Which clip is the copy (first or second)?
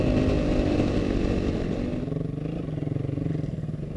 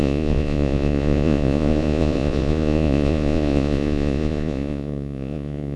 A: second